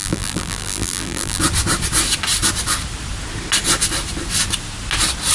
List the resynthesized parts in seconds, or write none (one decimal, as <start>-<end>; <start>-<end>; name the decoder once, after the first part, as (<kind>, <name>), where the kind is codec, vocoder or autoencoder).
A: 0.0-1.4 (vocoder, BigVGAN v2)